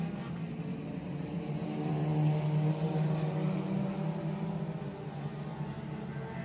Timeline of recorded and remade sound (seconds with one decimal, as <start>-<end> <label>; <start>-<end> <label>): 0.0-6.4 recorded